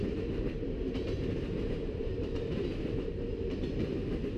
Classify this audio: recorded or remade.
remade